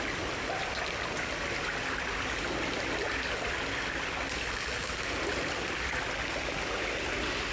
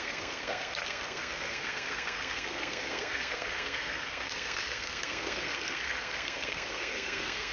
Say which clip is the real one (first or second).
first